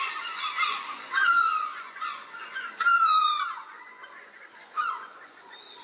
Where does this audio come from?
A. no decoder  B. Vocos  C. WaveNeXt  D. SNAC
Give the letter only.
B